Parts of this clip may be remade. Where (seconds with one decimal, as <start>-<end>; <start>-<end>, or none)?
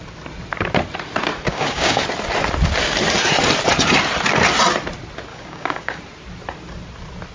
1.5-2.0; 5.3-6.0